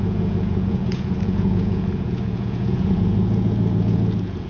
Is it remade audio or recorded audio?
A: remade